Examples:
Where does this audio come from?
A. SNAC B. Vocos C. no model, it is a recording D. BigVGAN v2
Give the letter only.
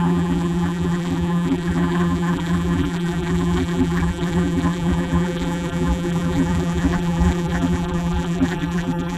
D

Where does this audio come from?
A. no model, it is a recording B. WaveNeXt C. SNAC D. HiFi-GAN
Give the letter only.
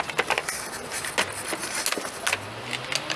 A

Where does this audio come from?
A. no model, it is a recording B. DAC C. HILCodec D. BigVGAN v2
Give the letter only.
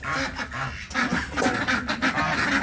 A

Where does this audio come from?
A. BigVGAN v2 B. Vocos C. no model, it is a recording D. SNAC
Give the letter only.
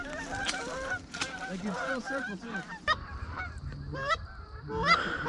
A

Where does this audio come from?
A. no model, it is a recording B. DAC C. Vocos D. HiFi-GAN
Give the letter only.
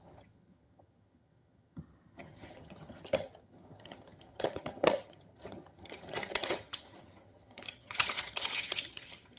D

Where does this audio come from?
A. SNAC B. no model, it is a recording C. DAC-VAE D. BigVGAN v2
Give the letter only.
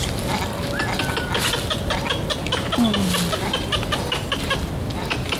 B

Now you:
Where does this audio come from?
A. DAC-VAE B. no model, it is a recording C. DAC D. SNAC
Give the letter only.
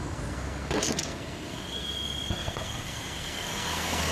D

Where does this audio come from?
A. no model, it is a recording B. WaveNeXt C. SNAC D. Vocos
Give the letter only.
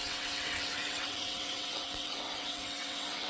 B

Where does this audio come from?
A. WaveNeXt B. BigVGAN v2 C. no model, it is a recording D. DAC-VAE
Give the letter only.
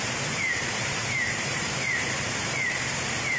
B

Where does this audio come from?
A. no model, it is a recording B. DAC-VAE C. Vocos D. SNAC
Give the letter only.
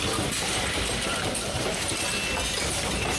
A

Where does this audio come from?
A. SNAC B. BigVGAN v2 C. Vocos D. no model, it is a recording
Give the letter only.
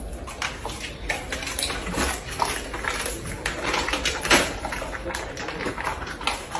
D